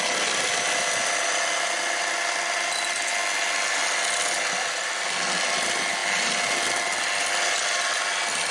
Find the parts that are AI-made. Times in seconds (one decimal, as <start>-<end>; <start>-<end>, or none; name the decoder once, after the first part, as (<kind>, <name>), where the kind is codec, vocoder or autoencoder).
none